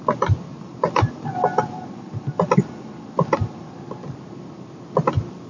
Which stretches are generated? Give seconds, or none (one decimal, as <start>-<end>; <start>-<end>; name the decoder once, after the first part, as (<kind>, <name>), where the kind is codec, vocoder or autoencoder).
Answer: 0.5-3.8 (vocoder, BigVGAN v2)